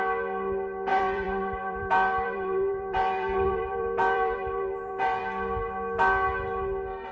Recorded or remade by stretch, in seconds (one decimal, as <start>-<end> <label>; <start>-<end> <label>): 0.0-0.9 recorded; 0.9-5.2 remade; 5.2-7.1 recorded